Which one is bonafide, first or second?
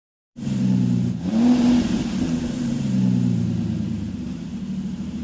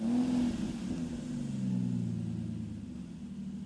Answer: second